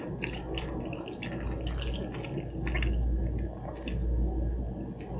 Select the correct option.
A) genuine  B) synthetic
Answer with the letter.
A